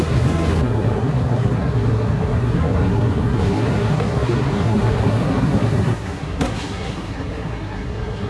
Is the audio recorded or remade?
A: remade